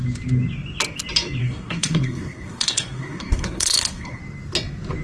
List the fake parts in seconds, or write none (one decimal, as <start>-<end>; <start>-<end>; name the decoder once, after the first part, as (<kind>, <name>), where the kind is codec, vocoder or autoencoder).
1.4-4.2 (codec, SNAC)